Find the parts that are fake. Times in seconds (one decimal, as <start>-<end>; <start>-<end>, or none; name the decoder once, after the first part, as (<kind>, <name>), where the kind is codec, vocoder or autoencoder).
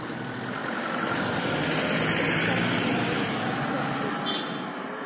none